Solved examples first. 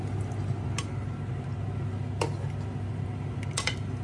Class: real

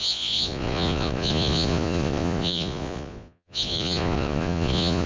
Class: fake